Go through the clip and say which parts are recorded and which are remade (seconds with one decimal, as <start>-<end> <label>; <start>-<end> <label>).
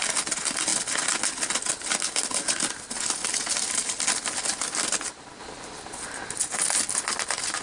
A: 0.0-7.6 recorded